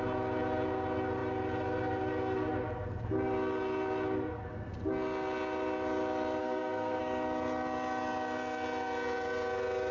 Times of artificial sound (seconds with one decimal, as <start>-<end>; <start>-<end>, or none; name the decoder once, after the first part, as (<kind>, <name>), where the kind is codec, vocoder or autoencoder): 6.4-7.0 (codec, SNAC)